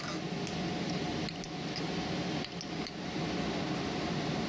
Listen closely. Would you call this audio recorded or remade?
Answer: recorded